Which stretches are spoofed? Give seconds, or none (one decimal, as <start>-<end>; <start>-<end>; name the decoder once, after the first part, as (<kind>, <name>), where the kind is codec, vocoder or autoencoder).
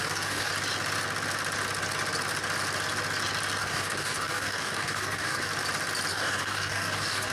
0.0-0.5 (codec, DAC); 3.6-5.5; 6.1-7.3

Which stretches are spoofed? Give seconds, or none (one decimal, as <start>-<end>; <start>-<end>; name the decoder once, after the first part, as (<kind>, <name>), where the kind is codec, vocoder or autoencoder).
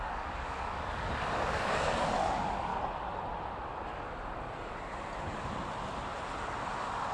0.0-2.7 (codec, DAC)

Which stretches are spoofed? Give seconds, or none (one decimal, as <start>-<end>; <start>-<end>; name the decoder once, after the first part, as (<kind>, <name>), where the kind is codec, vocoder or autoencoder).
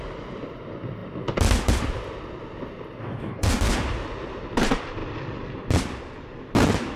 3.0-3.7 (codec, DAC)